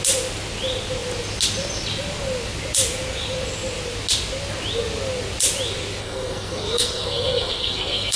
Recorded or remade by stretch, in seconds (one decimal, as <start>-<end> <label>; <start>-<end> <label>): 0.0-6.0 recorded; 6.0-8.2 remade